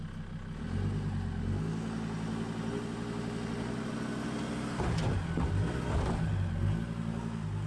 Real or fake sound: real